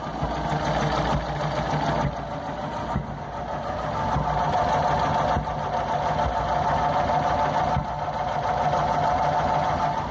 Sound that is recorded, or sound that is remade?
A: recorded